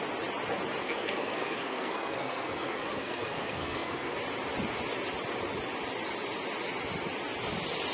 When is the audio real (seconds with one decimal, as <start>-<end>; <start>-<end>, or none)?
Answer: 0.0-0.8; 4.2-7.9